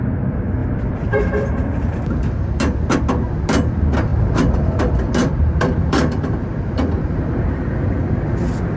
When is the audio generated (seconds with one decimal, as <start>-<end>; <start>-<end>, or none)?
0.6-2.6; 4.1-4.8; 5.2-7.6

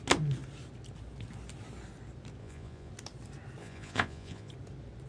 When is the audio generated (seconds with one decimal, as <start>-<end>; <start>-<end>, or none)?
2.4-2.9; 3.6-4.5